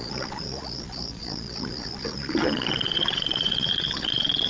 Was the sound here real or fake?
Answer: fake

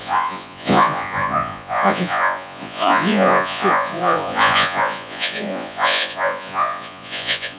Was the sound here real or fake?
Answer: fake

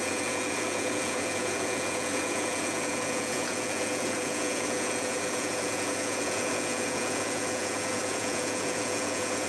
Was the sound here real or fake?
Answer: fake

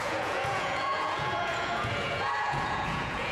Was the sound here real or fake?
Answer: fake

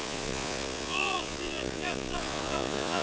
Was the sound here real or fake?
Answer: fake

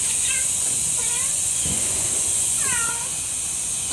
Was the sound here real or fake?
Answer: fake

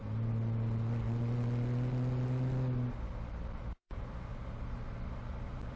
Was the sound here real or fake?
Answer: real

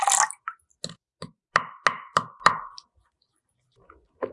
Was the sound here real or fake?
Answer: real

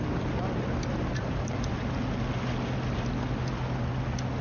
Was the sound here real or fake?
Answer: real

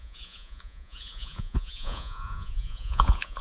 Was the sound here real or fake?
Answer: fake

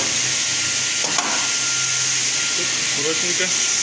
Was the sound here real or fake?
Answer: real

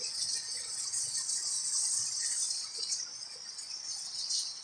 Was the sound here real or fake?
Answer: fake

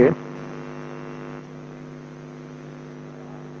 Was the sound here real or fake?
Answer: real